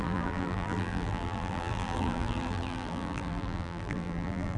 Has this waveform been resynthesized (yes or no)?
yes